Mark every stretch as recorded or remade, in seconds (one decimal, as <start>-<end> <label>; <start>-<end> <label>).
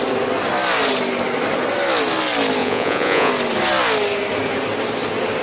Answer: 0.0-2.6 recorded; 2.6-3.3 remade; 3.3-5.4 recorded